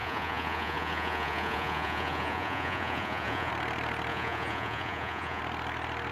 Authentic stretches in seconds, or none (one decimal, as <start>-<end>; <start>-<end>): 3.5-4.1; 5.4-6.1